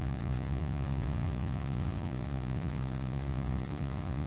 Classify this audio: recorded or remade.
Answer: remade